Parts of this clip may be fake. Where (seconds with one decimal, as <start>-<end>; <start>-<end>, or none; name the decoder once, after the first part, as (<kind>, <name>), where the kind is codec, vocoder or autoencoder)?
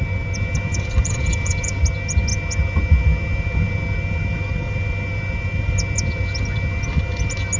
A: 0.7-1.8 (vocoder, Vocos)